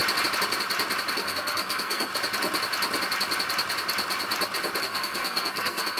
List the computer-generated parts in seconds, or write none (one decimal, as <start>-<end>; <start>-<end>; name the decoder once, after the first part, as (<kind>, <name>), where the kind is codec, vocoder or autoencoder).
1.1-2.1 (codec, SNAC); 4.8-6.0